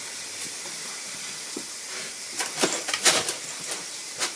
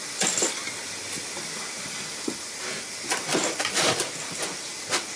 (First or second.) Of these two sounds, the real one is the second